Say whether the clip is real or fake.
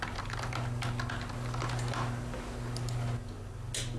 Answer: real